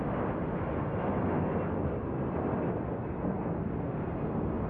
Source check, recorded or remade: recorded